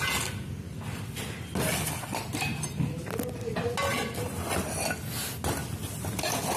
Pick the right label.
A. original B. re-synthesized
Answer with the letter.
A